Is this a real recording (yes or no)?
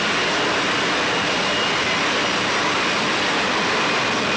no